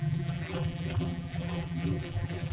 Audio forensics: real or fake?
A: fake